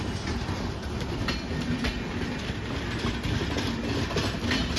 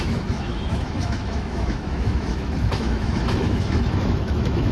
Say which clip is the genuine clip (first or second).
first